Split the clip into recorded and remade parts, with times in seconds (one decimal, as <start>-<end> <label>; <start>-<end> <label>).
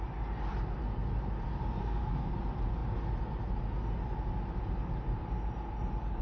0.0-1.8 recorded; 1.8-2.3 remade; 2.3-6.2 recorded